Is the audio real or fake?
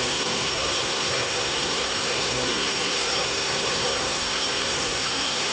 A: fake